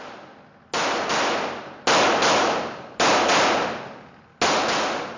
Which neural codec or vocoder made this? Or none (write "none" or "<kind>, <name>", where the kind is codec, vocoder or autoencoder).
none